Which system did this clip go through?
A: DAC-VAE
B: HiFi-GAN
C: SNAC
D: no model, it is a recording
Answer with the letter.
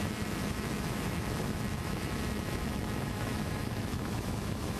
A